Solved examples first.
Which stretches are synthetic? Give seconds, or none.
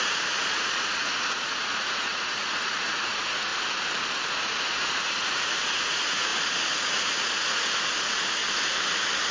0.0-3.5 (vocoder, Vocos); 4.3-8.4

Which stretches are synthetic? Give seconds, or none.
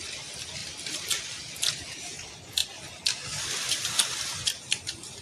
none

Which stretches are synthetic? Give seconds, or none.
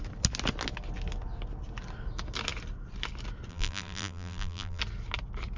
3.5-4.8 (vocoder, BigVGAN v2)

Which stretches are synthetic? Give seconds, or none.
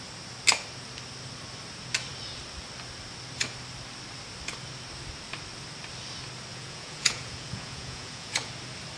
6.5-8.5 (vocoder, Vocos)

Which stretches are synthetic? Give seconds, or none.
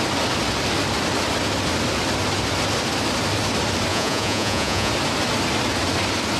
3.9-4.9 (vocoder, Vocos)